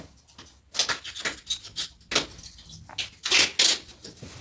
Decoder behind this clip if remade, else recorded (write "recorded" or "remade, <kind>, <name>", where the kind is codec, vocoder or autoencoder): recorded